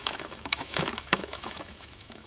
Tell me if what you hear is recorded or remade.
remade